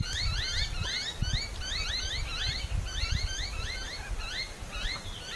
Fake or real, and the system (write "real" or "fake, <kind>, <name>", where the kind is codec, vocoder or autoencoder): real